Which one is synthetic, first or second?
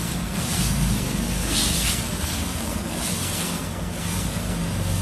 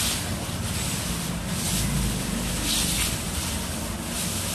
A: first